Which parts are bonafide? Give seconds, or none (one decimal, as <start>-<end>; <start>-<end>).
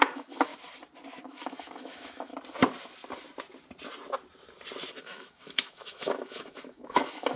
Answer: 0.5-1.2; 2.3-5.0